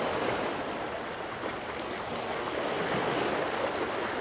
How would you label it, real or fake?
real